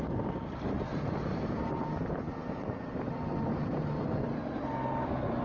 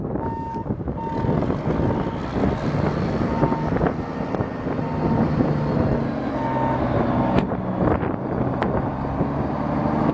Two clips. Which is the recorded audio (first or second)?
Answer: second